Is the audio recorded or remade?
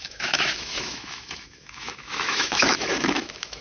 remade